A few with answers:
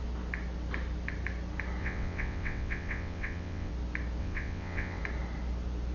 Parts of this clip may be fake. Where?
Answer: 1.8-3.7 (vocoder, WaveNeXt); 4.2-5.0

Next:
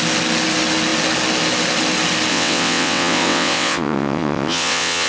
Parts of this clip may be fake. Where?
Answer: 2.3-5.1 (vocoder, WaveNeXt)

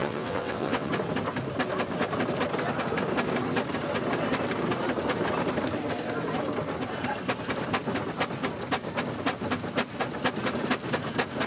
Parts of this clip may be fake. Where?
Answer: 0.0-0.9 (vocoder, WaveNeXt)

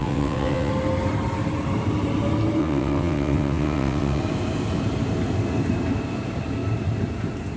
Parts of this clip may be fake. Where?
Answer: 0.0-0.7 (vocoder, WaveNeXt); 2.6-4.2

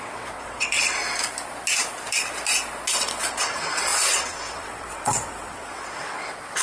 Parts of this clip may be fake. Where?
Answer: 0.0-1.0 (vocoder, WaveNeXt); 2.9-6.6